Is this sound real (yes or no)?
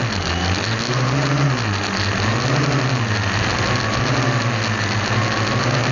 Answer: yes